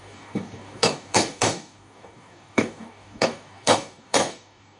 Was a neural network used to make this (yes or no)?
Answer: yes